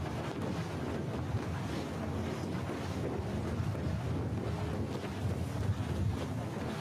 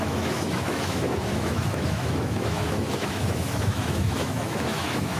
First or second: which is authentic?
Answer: first